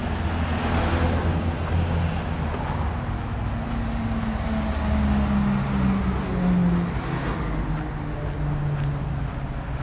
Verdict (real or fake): real